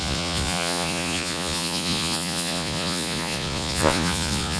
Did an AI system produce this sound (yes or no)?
yes